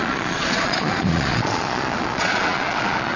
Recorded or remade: remade